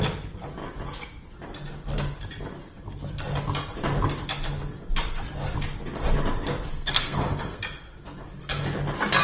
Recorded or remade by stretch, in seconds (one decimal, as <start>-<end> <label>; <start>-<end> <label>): 0.0-6.7 recorded; 6.7-7.6 remade; 7.6-9.2 recorded